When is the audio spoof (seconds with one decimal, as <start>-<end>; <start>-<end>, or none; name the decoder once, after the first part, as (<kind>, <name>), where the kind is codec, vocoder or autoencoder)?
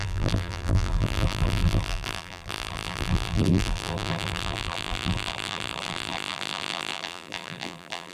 0.0-8.1 (vocoder, BigVGAN v2)